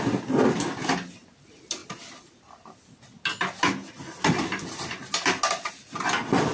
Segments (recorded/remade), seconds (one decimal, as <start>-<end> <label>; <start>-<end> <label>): 0.0-6.5 recorded

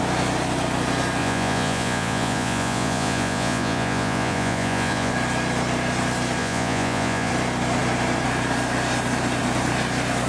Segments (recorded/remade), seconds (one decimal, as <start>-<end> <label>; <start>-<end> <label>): 0.0-1.2 recorded; 1.2-5.1 remade; 5.1-6.4 recorded; 6.4-7.3 remade; 7.3-10.3 recorded